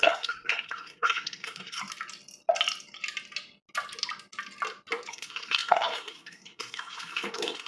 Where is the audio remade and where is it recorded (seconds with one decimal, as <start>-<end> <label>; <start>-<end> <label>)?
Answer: 0.0-1.8 remade; 1.8-5.1 recorded; 5.1-7.7 remade